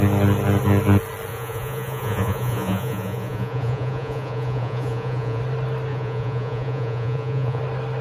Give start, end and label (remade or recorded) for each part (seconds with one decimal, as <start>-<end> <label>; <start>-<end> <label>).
0.0-1.3 recorded; 1.3-5.4 remade; 5.4-5.9 recorded; 5.9-7.6 remade; 7.6-8.0 recorded